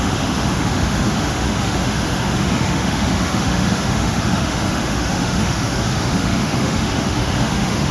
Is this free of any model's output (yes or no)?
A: no